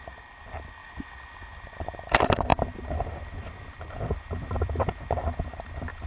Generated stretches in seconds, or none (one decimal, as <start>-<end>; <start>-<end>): 0.0-6.1

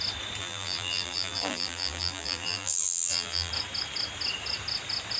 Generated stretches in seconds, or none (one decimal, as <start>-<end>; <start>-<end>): 0.4-3.5